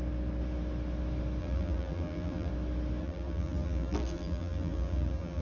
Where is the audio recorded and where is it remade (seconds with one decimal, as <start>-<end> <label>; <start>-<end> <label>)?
0.0-1.4 recorded; 1.4-2.5 remade; 2.5-3.0 recorded; 3.0-5.4 remade